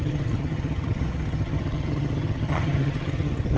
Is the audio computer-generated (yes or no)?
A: yes